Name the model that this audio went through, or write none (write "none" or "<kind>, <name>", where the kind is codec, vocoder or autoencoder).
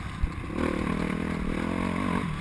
none